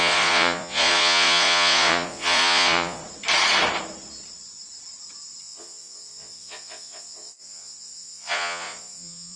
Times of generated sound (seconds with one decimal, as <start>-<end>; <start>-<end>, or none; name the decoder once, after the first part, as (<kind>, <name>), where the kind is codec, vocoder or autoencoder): 0.0-3.0 (vocoder, Vocos); 5.4-9.4